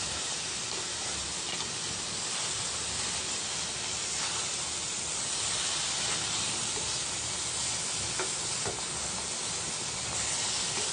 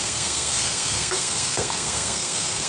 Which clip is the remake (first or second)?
second